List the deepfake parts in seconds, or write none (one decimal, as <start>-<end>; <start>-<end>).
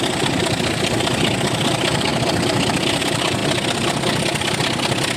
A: 0.0-3.4